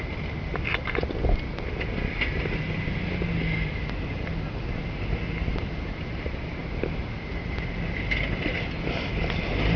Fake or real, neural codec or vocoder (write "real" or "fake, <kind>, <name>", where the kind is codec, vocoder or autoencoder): real